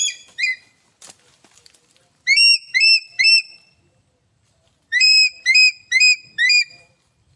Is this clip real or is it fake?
fake